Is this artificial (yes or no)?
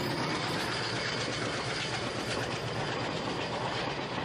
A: no